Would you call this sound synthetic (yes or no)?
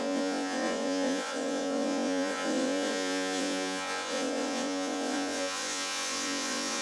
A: yes